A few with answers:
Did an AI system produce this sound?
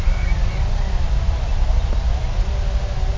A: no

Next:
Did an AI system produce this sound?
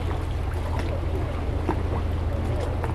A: no